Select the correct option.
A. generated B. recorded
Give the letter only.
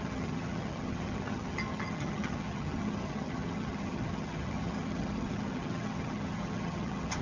A